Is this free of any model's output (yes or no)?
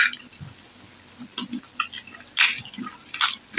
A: yes